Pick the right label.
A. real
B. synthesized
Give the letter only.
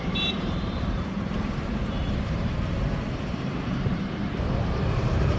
B